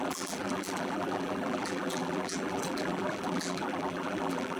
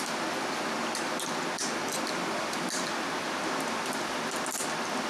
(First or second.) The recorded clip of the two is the second